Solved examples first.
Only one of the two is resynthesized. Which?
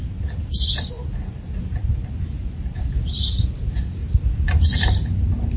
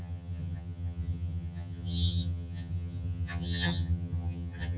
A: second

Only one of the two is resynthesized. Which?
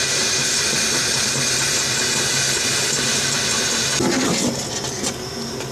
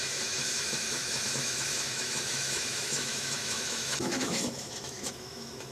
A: second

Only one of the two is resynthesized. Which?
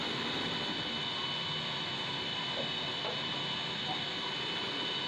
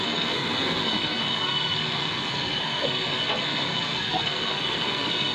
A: second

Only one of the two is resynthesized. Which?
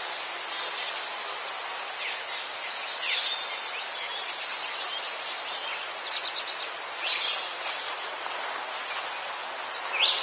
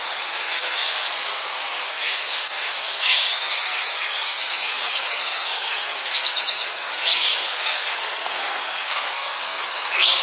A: second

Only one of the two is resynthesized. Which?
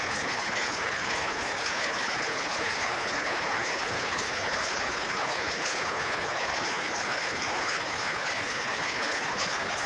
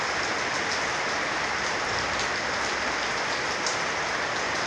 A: first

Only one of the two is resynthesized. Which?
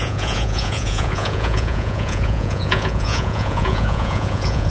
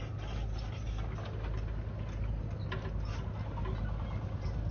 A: first